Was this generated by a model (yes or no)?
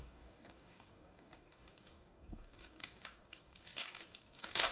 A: yes